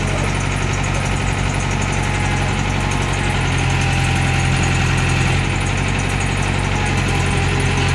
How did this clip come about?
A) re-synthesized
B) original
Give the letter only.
B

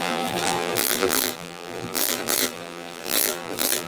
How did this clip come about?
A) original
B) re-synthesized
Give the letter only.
B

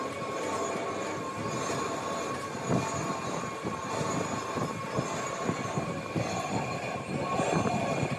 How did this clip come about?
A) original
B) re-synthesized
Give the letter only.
A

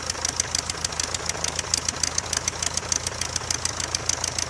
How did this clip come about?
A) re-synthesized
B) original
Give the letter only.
B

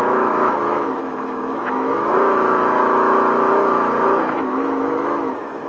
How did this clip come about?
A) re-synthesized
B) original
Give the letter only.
A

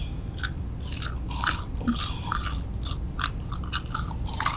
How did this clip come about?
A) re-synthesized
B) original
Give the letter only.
B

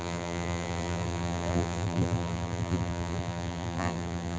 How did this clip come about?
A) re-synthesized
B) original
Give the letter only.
A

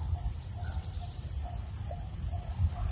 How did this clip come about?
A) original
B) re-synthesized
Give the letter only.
B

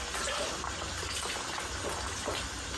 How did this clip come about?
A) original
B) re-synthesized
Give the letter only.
A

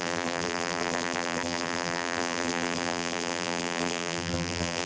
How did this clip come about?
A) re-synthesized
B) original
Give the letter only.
A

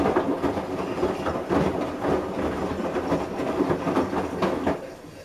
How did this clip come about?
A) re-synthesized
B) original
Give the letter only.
B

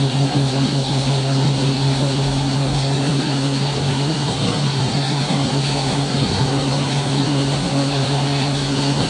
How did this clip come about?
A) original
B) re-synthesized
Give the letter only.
B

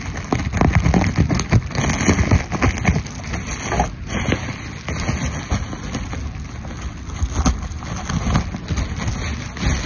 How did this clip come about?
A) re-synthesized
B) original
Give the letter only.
B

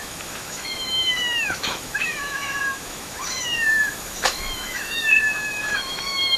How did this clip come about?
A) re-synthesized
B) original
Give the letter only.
A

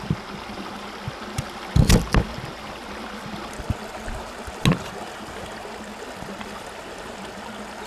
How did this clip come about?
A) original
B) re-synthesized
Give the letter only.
A